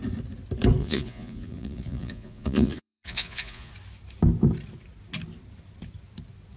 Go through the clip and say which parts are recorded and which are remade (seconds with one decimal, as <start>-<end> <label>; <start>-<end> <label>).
0.0-0.8 recorded; 0.8-3.7 remade; 3.7-6.6 recorded